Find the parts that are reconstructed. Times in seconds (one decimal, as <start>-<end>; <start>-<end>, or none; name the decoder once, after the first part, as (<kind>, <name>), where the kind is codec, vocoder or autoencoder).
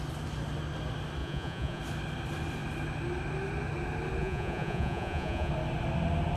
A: 1.2-1.8 (vocoder, Vocos); 4.2-5.5